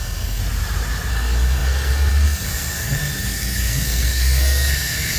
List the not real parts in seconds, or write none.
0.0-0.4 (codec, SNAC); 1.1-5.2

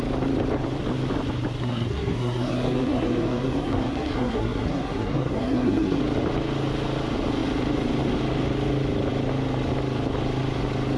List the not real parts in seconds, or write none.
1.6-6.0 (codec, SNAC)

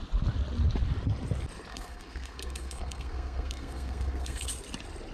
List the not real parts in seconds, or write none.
1.7-4.5 (codec, SNAC)

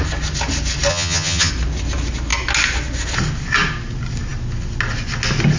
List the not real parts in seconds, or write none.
0.9-1.5 (vocoder, HiFi-GAN)

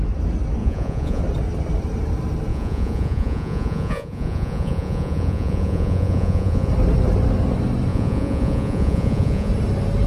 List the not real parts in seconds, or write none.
0.6-1.2 (vocoder, Vocos); 2.5-6.7; 7.9-9.5

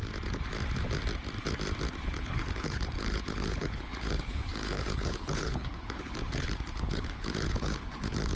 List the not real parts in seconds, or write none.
2.0-8.4 (codec, HILCodec)

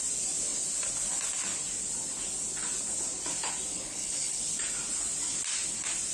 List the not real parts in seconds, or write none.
3.7-4.4 (codec, HILCodec)

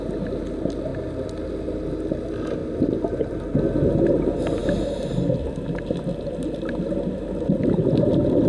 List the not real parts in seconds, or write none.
none